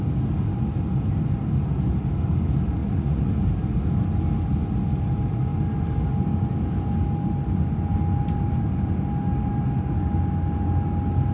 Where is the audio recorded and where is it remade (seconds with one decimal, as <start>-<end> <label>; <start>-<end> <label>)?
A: 0.0-2.8 recorded; 2.8-3.3 remade; 3.3-11.3 recorded